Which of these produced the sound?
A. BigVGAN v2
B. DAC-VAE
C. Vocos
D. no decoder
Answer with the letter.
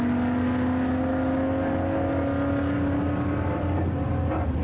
D